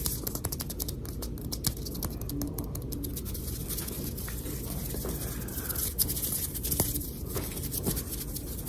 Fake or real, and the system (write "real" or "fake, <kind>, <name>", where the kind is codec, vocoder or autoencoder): real